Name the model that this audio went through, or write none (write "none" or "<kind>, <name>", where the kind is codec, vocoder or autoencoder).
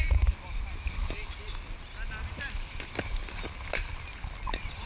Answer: none